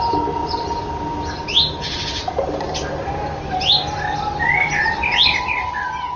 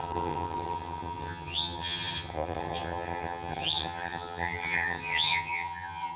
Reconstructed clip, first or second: second